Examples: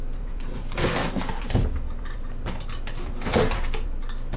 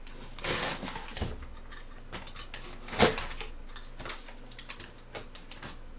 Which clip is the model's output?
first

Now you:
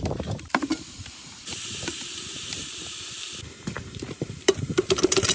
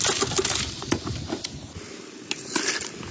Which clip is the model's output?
first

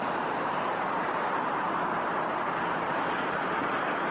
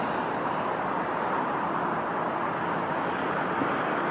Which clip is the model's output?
first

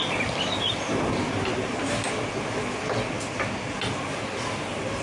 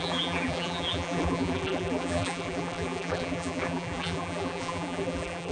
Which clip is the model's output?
second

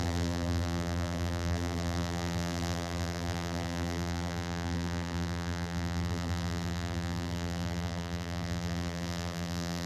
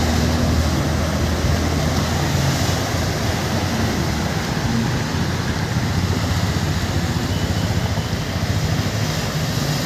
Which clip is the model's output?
first